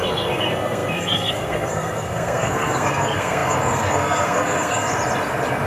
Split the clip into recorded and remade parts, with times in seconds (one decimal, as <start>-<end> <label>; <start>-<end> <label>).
0.0-4.9 remade; 4.9-5.7 recorded